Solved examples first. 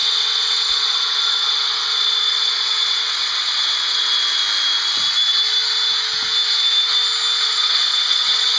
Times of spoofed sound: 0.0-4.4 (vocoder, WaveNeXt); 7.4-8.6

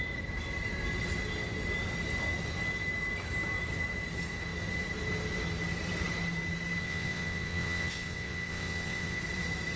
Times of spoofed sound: 6.8-9.2 (vocoder, WaveNeXt)